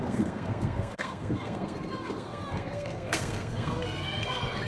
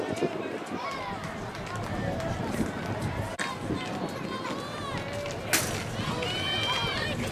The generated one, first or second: first